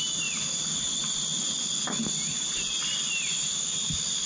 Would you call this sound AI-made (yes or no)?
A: no